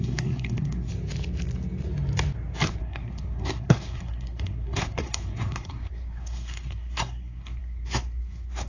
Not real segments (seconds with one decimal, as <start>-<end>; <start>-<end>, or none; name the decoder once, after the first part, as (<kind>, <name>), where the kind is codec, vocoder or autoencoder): 0.0-0.9 (codec, SNAC); 2.8-8.7

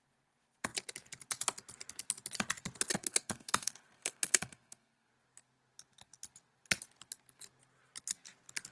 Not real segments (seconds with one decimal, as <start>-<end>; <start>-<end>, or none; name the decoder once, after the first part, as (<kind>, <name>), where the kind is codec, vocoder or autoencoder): 2.9-5.1 (codec, SNAC)

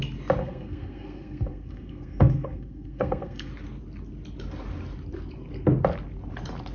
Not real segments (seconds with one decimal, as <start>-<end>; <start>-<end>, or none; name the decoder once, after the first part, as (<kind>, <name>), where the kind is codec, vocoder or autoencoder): 0.4-3.5 (codec, SNAC)

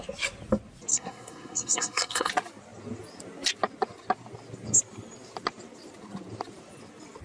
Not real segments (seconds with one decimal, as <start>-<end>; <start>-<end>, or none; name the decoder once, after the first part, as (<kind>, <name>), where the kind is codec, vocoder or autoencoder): 0.9-2.3 (codec, SNAC)

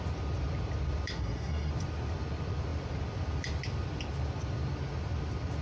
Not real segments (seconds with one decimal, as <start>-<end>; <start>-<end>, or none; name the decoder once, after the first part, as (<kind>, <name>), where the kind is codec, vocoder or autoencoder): 1.2-1.7 (codec, SNAC)

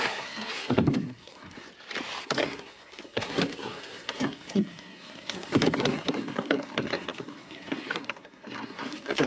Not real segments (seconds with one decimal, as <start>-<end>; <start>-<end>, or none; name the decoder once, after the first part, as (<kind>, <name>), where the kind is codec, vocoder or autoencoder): 0.0-1.7 (codec, SNAC); 2.2-9.3